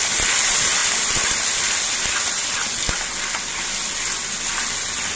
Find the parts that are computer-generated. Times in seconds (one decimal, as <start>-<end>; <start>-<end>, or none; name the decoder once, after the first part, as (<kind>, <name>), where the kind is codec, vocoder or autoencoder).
0.8-3.2 (vocoder, BigVGAN v2)